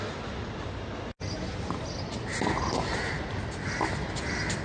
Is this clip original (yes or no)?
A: yes